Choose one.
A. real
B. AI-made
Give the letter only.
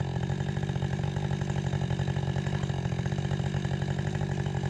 A